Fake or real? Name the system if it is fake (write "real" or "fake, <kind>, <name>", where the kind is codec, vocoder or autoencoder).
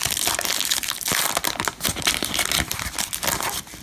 real